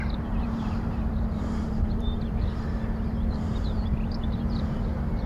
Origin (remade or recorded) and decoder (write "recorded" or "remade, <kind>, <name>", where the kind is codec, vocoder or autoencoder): remade, vocoder, BigVGAN v2